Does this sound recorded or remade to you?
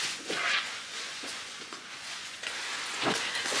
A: remade